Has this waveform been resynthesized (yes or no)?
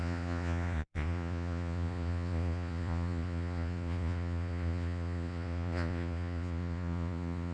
yes